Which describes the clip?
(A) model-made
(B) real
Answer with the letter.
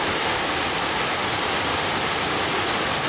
B